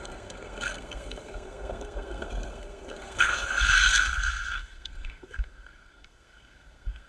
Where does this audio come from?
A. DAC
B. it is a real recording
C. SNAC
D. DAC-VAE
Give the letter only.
C